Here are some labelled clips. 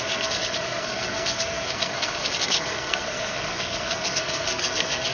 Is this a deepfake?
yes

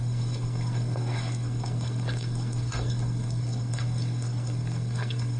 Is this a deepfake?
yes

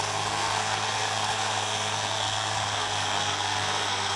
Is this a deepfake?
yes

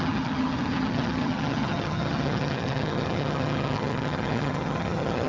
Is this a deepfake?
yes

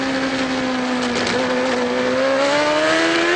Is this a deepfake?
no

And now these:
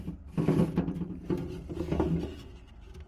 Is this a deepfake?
no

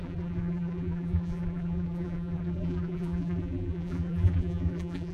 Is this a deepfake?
yes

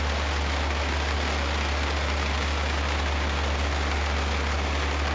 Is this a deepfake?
no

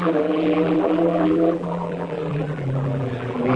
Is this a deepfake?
yes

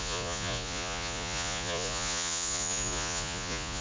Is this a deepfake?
yes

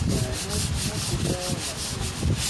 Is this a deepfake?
no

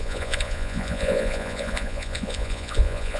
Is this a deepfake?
yes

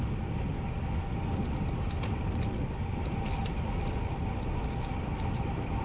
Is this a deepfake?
no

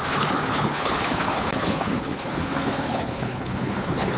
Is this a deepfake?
yes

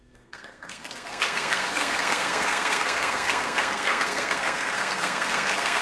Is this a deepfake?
yes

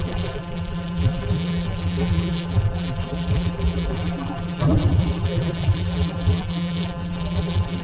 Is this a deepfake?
yes